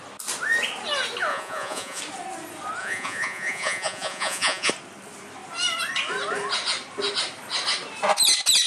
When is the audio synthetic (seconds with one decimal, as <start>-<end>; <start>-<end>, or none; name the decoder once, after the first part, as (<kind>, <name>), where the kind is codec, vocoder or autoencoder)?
1.3-2.0 (vocoder, Vocos); 2.8-4.7